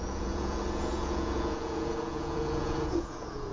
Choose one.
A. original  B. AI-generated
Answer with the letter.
B